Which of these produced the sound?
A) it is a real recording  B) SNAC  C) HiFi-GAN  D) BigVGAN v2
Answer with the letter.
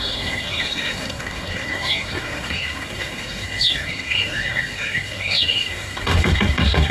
B